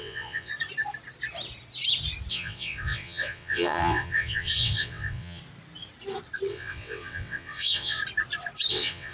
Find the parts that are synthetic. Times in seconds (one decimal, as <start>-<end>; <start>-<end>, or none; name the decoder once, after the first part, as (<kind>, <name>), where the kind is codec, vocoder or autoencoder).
0.0-0.5 (vocoder, WaveNeXt); 2.3-5.4; 6.5-8.0; 8.7-9.1